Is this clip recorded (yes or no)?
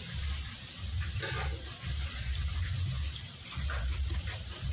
yes